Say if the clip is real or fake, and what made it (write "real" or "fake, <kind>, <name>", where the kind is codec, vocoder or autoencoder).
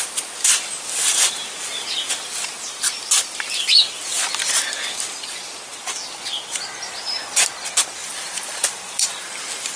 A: real